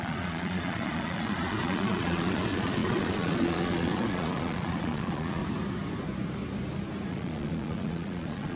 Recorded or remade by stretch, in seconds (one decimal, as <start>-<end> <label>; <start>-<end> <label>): 0.0-5.4 remade; 5.4-7.1 recorded; 7.1-8.6 remade